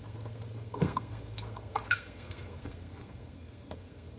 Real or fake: fake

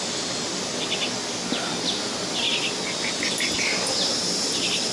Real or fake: real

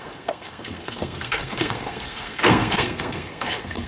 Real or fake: fake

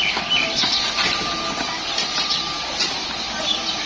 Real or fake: real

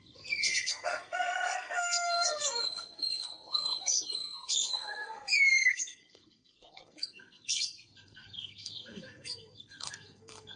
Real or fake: fake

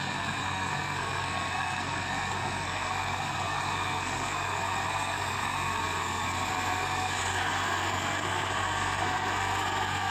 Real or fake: fake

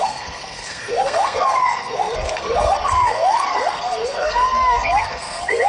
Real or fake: fake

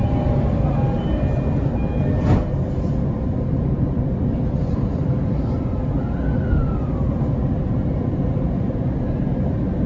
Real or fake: real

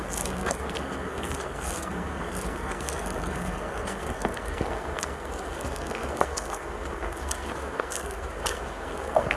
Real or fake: fake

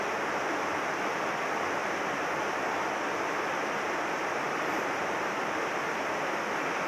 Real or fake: real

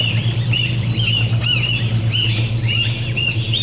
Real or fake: real